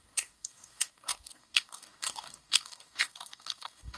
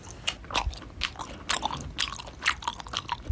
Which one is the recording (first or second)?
second